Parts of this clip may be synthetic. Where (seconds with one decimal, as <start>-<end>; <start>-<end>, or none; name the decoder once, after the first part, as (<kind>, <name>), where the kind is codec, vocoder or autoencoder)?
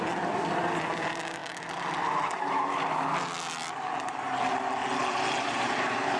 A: 0.0-1.4 (vocoder, BigVGAN v2); 5.1-6.2